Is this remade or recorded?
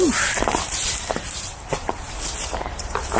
remade